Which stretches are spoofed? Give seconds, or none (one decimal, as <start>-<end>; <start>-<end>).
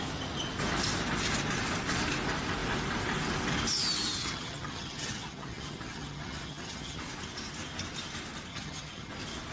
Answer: 4.2-7.0; 8.5-9.1